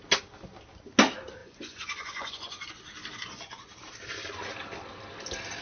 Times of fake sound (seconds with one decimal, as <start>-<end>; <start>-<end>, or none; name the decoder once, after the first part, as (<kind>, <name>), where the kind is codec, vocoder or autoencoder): 1.4-2.7 (vocoder, Vocos)